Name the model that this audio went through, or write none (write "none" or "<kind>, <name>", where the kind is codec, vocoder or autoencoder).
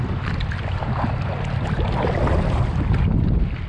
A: none